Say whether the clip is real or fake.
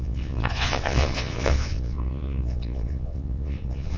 fake